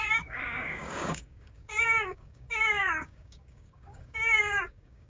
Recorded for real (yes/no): no